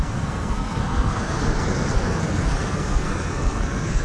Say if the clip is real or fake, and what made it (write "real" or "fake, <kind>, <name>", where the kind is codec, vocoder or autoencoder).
fake, codec, SNAC